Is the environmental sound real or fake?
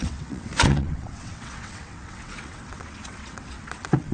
fake